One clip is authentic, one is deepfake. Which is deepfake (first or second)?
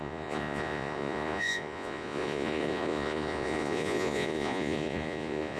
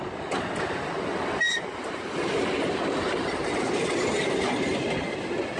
first